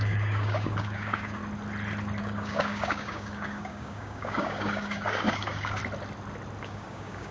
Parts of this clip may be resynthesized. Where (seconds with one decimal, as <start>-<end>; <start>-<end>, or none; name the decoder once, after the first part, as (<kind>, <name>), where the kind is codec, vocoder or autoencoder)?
0.0-1.4 (codec, DAC); 2.2-5.8; 6.6-7.3